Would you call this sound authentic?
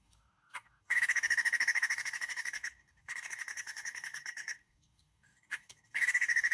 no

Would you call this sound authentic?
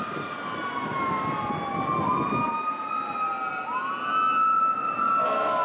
yes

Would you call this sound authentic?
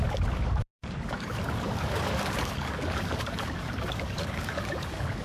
no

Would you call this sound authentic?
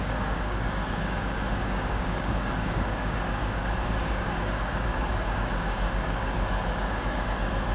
no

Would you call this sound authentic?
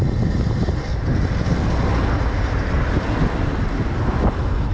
yes